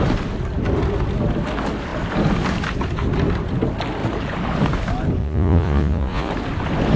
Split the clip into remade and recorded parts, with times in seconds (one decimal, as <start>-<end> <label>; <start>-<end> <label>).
0.0-5.2 recorded; 5.2-6.3 remade; 6.3-7.0 recorded